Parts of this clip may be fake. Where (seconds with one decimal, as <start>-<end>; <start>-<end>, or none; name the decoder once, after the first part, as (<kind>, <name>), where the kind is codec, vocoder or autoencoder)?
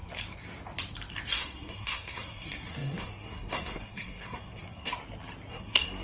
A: 1.3-4.9 (codec, SNAC); 5.5-6.0